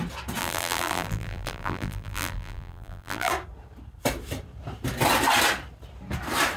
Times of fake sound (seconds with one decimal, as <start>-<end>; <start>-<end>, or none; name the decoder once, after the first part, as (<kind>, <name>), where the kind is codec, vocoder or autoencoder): 0.4-3.3 (vocoder, BigVGAN v2)